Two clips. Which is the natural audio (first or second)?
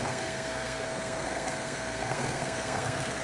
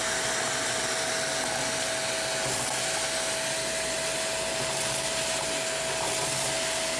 second